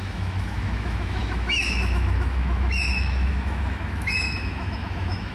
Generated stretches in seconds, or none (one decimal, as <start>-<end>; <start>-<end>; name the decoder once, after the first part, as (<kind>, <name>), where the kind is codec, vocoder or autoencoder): 0.0-5.3 (autoencoder, DAC-VAE)